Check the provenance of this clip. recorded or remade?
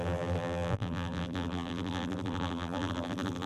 remade